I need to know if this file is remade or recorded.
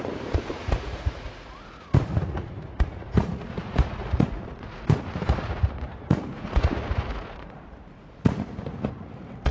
remade